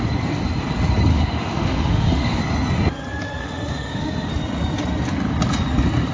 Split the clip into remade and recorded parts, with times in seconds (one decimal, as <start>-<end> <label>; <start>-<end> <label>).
0.0-1.1 recorded; 1.1-2.4 remade; 2.4-3.4 recorded; 3.4-4.3 remade; 4.3-6.1 recorded